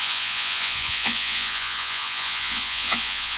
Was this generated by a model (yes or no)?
yes